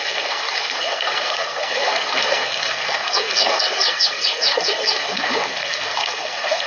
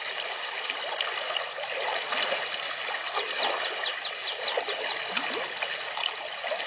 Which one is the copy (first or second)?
first